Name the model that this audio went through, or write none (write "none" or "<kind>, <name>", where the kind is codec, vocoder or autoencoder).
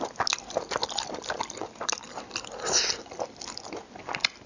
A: none